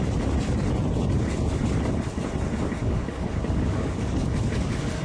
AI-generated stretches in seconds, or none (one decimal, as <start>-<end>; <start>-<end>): 2.8-5.0